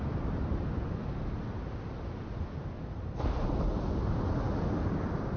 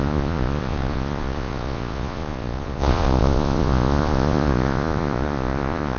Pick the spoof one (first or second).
second